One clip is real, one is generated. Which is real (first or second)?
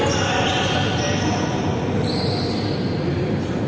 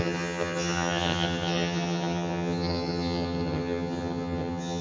first